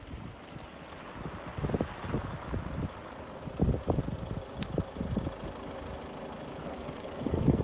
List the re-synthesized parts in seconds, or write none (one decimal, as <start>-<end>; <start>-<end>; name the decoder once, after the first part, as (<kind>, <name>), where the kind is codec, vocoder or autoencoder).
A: 6.6-7.6 (codec, SNAC)